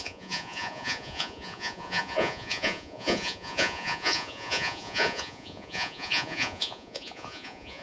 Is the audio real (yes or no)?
no